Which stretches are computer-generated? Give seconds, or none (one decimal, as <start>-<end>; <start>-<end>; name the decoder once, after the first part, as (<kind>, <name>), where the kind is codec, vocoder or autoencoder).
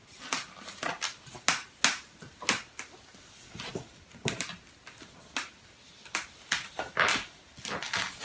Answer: none